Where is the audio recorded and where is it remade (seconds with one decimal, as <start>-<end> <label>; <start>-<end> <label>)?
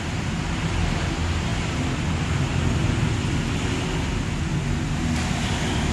0.0-5.9 recorded